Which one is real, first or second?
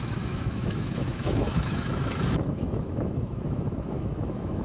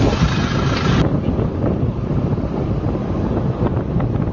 second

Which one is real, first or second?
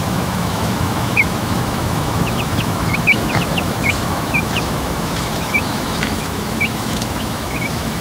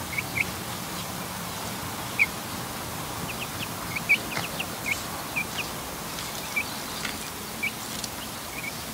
second